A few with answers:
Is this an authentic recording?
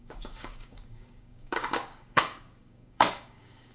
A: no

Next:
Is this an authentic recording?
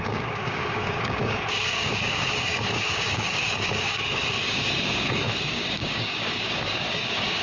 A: no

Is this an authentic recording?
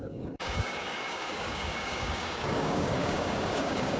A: no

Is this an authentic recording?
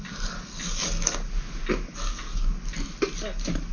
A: yes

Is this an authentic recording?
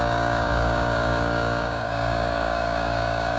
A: no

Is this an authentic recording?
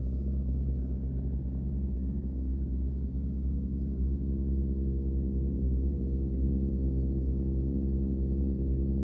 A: no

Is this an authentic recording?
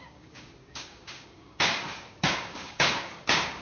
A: no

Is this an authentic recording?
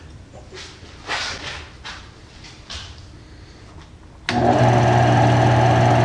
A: yes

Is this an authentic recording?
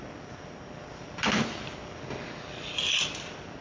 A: yes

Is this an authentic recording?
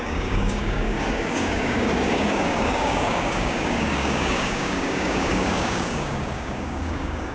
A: no